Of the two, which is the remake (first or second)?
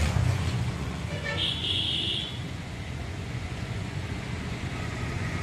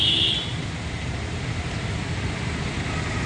first